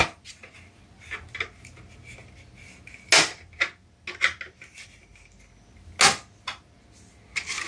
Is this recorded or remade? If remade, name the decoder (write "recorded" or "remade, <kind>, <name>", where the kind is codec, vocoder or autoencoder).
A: recorded